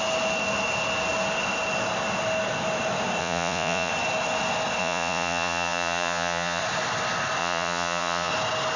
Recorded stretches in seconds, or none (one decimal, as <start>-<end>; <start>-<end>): 0.0-3.2; 3.9-4.8; 6.6-7.4; 8.3-8.8